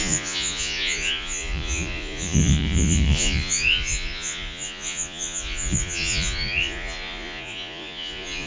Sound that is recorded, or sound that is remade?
remade